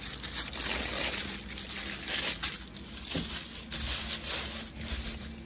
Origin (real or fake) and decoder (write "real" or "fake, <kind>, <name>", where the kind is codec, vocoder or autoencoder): real